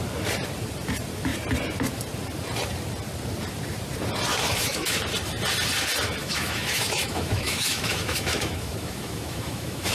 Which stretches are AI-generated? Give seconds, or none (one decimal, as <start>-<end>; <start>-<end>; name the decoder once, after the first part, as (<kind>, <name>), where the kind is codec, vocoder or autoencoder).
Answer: 4.3-5.0 (autoencoder, DAC-VAE); 6.2-9.9